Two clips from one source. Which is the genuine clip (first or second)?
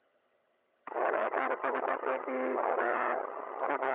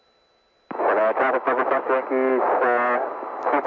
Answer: second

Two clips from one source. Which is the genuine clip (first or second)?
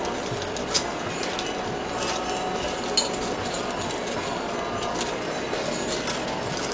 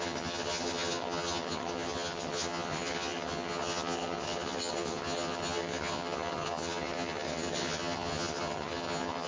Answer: first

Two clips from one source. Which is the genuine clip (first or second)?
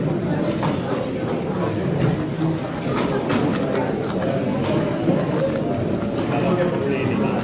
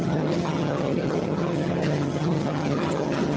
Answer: first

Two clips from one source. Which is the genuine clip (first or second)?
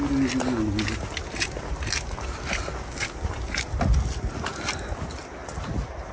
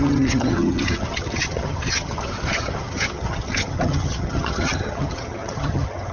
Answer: first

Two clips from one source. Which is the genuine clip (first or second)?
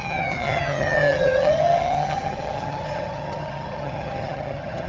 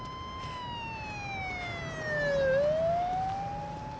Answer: second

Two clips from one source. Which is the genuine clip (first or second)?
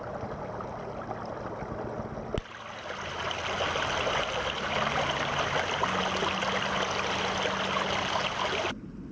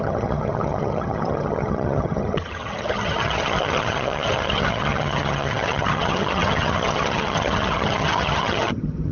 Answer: first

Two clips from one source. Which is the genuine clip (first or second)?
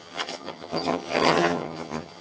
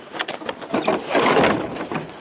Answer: second